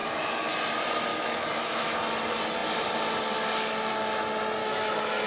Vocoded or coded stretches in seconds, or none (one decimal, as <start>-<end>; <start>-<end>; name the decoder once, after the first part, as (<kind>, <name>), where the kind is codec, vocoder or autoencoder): 0.0-0.5 (autoencoder, DAC-VAE); 1.1-2.0; 4.6-5.3